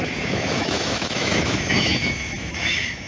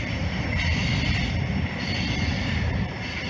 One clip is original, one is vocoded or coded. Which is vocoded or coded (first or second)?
first